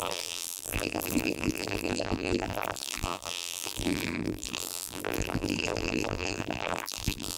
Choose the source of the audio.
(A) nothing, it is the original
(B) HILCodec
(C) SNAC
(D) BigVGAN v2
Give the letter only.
D